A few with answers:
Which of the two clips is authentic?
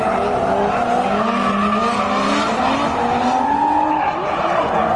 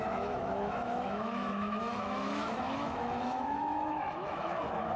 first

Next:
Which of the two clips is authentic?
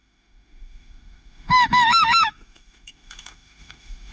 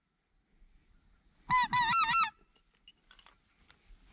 second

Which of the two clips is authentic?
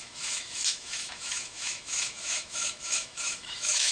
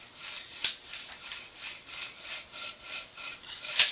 second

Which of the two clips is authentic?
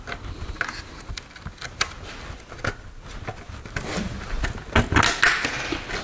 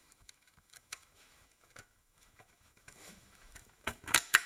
first